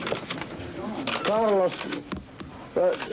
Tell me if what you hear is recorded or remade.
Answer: recorded